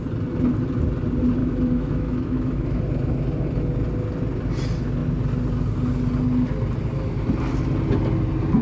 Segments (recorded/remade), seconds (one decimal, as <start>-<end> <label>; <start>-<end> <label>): 0.0-1.4 recorded; 1.4-2.8 remade; 2.8-8.6 recorded

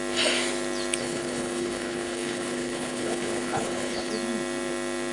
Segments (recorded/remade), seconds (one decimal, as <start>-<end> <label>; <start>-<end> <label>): 0.0-1.0 recorded; 1.0-4.1 remade; 4.1-5.1 recorded

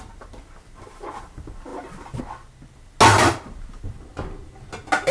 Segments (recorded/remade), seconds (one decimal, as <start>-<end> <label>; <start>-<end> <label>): 0.0-1.7 recorded; 1.7-2.2 remade; 2.2-3.1 recorded; 3.1-3.9 remade; 3.9-5.1 recorded

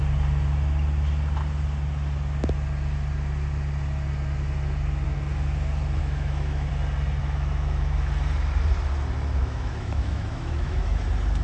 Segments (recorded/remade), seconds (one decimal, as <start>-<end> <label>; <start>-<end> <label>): 0.0-6.0 recorded; 6.0-6.7 remade; 6.7-7.2 recorded; 7.2-8.1 remade; 8.1-9.4 recorded; 9.4-11.0 remade; 11.0-11.4 recorded